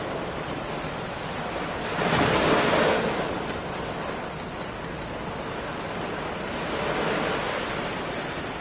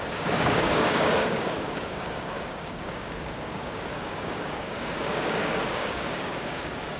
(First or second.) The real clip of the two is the first